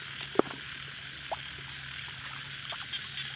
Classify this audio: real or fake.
real